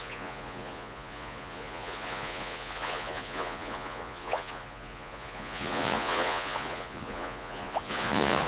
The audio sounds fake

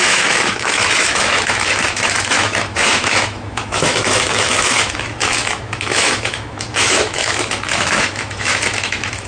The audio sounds fake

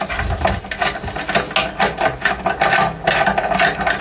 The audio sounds real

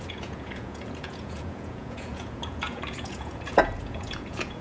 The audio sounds fake